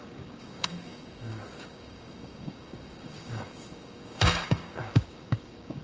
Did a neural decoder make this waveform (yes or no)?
yes